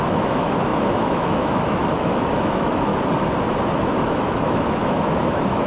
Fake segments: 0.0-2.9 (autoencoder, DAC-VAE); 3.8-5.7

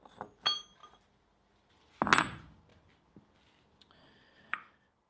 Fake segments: none